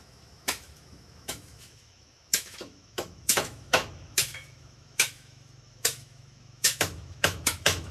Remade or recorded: remade